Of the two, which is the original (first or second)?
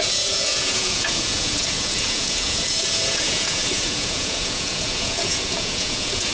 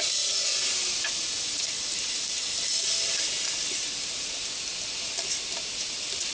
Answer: second